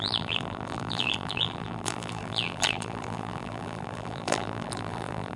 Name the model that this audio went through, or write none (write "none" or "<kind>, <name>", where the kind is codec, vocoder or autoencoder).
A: vocoder, BigVGAN v2